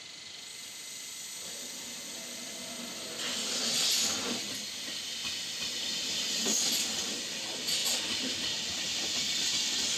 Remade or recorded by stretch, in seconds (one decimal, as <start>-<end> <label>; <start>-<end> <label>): 0.0-10.0 recorded